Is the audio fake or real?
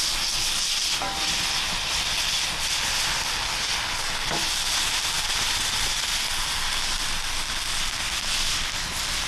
real